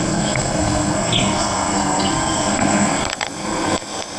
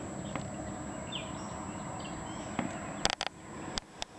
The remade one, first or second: first